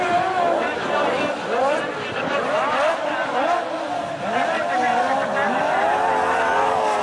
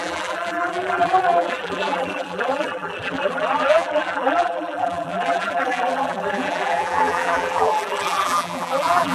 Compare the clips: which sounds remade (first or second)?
second